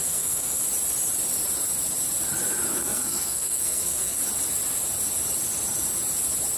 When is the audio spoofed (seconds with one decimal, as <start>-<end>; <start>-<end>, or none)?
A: 0.0-0.6; 2.8-4.2